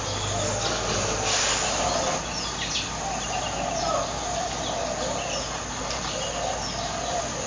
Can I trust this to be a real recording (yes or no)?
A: yes